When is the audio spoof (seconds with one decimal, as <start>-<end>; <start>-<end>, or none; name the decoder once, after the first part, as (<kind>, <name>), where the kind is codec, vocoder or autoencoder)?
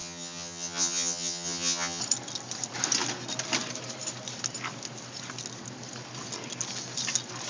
0.0-2.0 (vocoder, HiFi-GAN)